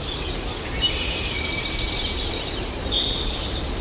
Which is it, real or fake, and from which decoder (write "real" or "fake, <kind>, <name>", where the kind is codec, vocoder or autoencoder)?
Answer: fake, vocoder, BigVGAN v2